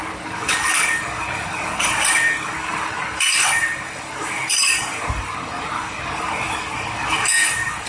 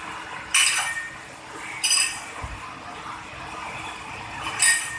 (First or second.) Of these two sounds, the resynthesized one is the first